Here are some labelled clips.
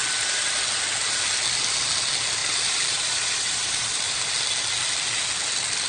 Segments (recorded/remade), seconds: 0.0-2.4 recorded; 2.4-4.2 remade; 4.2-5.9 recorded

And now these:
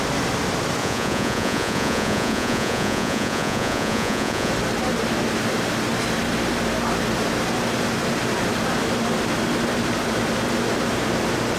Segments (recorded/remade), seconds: 0.0-0.8 recorded; 0.8-4.5 remade; 4.5-11.6 recorded

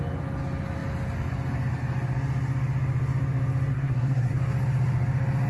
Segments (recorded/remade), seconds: 0.0-3.7 recorded; 3.7-4.3 remade; 4.3-5.5 recorded

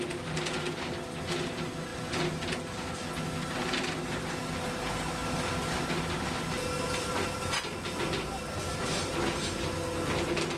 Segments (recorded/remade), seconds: 0.0-10.6 recorded

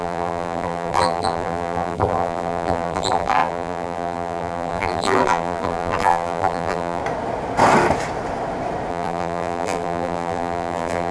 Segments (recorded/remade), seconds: 0.0-7.0 remade; 7.0-8.9 recorded; 8.9-11.1 remade

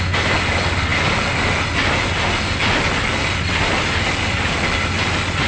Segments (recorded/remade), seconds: 0.0-5.5 recorded

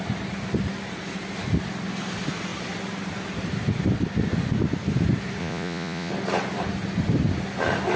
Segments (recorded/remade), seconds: 0.0-5.4 recorded; 5.4-6.1 remade; 6.1-8.0 recorded